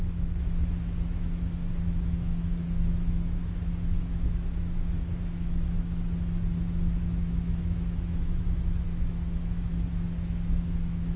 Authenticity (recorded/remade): remade